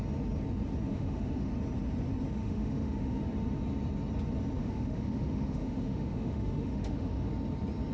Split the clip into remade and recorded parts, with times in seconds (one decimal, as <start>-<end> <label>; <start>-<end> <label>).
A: 0.0-0.9 recorded; 0.9-1.5 remade; 1.5-2.4 recorded; 2.4-3.2 remade; 3.2-4.6 recorded; 4.6-7.3 remade; 7.3-7.9 recorded